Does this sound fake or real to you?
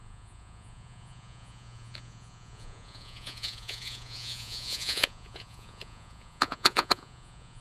fake